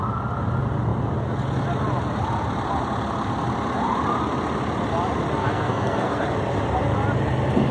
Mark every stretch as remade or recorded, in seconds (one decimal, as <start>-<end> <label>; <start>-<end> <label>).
0.0-5.4 recorded; 5.4-6.2 remade; 6.2-7.7 recorded